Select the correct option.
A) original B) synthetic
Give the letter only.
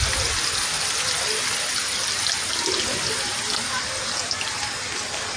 A